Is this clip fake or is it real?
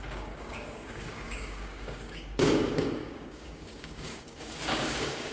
fake